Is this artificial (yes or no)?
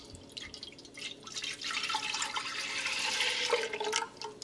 no